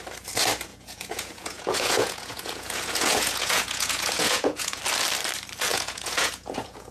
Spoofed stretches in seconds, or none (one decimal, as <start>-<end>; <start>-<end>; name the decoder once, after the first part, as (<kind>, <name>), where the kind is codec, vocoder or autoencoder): 0.7-4.8 (vocoder, Vocos); 5.7-6.9